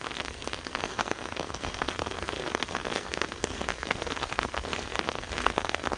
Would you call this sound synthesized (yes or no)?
yes